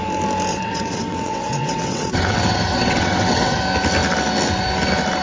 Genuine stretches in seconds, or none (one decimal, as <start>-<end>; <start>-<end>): 0.0-0.5; 3.6-5.2